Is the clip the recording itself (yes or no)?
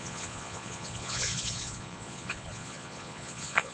no